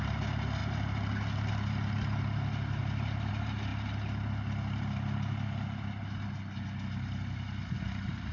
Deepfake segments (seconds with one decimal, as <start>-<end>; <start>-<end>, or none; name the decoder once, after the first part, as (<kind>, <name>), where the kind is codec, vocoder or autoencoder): none